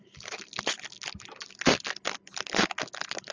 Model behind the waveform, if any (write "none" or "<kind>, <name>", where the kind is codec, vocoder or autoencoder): none